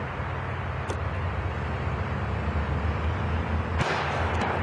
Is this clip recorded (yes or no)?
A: yes